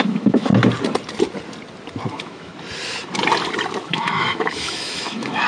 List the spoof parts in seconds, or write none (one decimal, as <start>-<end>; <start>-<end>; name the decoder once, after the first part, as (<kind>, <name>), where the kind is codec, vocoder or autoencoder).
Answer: 0.0-0.5 (autoencoder, DAC-VAE); 2.1-2.5; 3.8-5.5